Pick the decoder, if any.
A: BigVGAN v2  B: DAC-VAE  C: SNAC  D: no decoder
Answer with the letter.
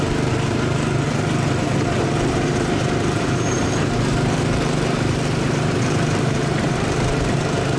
A